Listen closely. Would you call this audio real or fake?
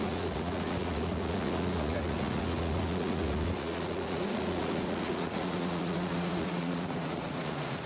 fake